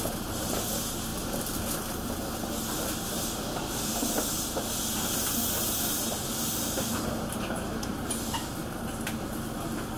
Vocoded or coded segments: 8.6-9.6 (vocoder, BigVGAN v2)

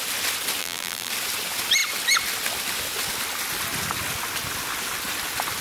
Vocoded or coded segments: 0.6-1.1 (vocoder, BigVGAN v2)

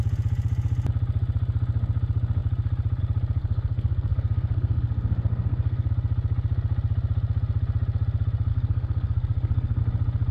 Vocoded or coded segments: 3.4-5.9 (codec, SNAC); 8.5-9.8

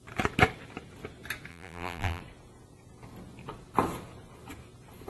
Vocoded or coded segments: 1.5-2.2 (vocoder, BigVGAN v2)

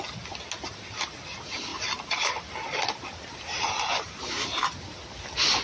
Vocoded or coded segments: 1.7-5.1 (vocoder, BigVGAN v2)